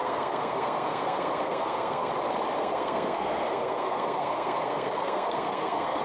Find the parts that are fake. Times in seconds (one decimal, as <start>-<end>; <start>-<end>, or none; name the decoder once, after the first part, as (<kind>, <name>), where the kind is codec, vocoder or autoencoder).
0.0-2.1 (codec, SNAC); 2.6-6.0